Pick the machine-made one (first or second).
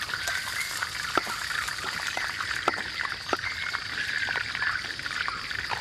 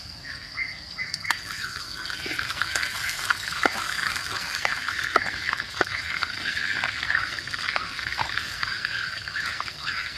second